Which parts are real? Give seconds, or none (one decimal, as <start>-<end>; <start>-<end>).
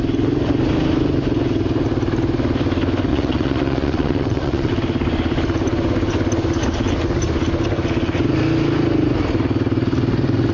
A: 0.0-3.1; 4.7-10.5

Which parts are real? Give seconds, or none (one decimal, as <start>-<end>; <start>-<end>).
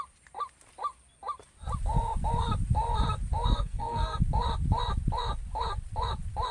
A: 0.0-3.5; 4.2-6.5